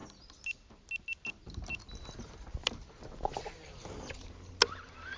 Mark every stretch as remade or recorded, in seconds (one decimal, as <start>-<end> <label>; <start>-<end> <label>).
0.0-5.2 recorded